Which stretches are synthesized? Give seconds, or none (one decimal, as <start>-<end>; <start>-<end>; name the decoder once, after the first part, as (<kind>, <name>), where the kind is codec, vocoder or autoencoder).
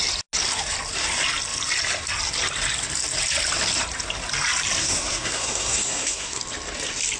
4.8-6.4 (codec, SNAC)